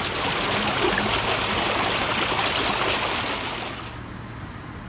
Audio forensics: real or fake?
real